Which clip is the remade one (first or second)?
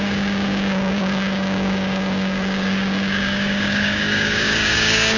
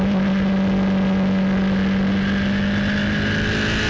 first